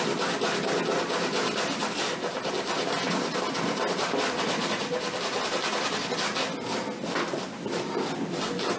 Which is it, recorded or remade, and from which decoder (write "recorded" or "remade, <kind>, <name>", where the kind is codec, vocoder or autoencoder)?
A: recorded